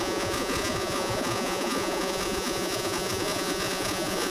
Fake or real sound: fake